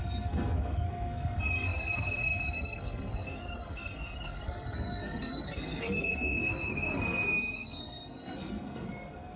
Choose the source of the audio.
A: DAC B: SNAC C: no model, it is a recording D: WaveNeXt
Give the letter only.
B